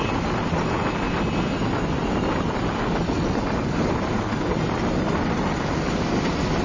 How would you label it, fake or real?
real